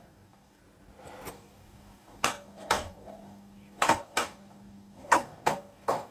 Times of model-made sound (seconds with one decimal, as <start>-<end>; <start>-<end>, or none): 0.0-0.6; 1.3-6.1